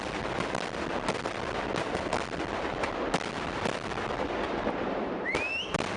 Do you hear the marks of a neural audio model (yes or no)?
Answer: no